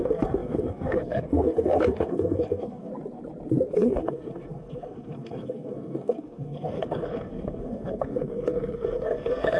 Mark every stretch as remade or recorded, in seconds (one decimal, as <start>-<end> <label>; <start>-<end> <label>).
0.0-2.9 remade; 2.9-3.7 recorded; 3.7-9.6 remade